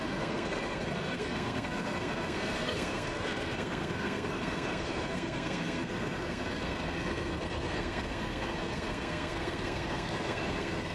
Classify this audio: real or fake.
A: fake